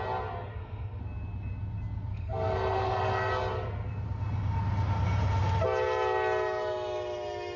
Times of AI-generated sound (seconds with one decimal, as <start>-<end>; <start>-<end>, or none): 0.5-1.0; 2.1-3.3